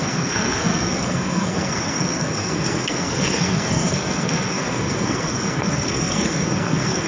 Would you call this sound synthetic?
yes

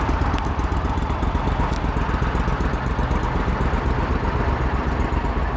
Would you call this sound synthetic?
no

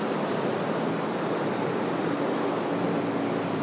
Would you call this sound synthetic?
no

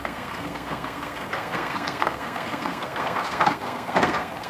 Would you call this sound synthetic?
yes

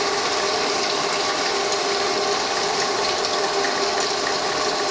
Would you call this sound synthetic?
no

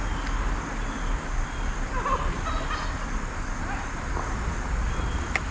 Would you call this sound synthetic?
no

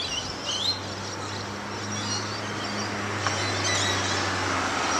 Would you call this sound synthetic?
no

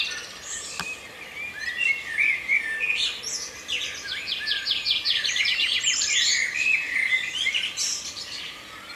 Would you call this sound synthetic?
no